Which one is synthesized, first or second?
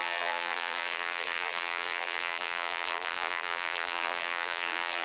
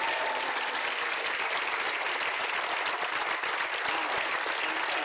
first